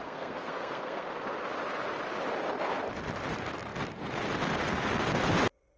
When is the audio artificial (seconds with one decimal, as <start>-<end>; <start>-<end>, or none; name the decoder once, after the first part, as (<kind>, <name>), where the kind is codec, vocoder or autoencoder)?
0.0-1.1 (codec, SNAC)